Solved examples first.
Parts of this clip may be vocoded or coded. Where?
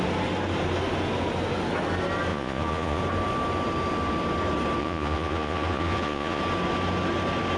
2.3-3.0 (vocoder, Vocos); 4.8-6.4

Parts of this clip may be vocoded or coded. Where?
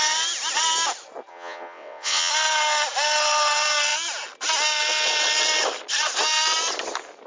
1.3-2.3 (vocoder, WaveNeXt)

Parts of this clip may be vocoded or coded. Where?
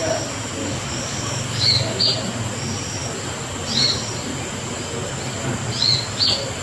0.6-2.0 (codec, DAC)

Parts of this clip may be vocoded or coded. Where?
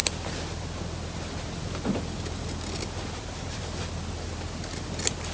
none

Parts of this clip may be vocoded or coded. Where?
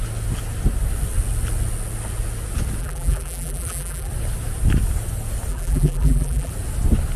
2.8-4.1 (vocoder, BigVGAN v2); 5.5-6.5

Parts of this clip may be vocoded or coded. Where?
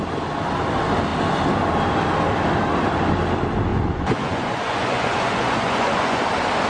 3.7-6.2 (vocoder, Vocos)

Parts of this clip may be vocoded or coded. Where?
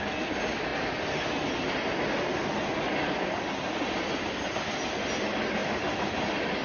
none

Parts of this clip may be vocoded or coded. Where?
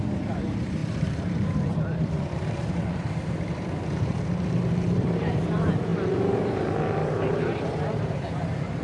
0.0-8.8 (vocoder, BigVGAN v2)